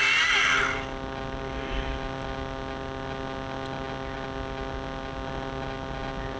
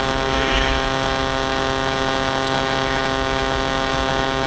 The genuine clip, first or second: first